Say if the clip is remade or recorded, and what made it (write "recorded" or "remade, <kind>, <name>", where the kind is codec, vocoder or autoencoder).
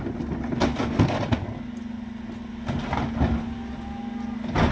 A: recorded